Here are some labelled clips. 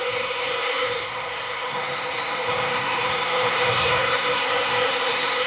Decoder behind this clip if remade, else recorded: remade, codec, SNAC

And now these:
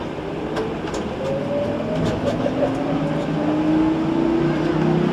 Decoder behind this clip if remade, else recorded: recorded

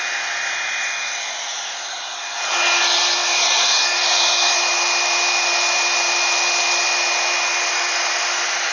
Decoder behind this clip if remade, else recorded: recorded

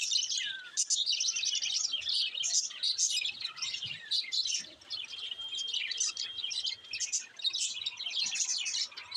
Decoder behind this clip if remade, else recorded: recorded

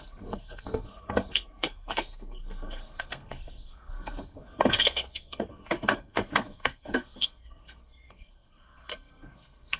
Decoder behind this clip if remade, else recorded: remade, codec, SNAC